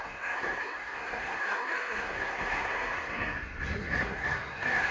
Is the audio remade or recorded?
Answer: remade